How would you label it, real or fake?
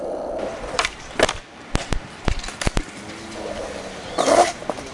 fake